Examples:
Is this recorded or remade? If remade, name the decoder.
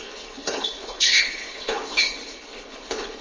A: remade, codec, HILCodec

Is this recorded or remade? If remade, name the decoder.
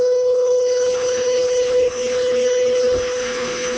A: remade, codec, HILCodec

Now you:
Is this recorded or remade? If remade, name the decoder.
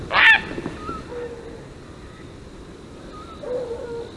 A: recorded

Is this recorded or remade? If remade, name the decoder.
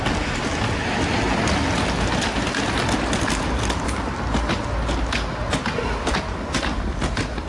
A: recorded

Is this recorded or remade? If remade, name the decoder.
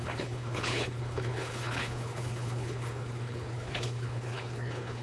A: remade, codec, HILCodec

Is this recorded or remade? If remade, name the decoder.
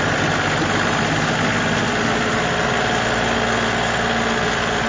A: recorded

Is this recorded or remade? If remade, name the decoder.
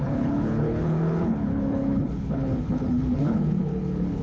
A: remade, codec, HILCodec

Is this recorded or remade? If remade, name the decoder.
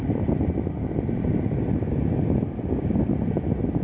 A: recorded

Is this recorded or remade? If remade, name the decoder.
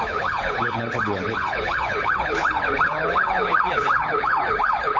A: remade, codec, HILCodec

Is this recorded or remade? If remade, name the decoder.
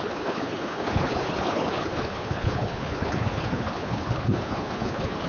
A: remade, codec, HILCodec